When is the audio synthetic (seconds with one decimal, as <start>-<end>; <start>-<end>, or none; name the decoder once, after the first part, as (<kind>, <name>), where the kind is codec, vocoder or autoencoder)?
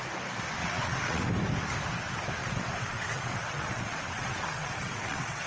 0.6-1.3 (vocoder, WaveNeXt); 2.4-5.5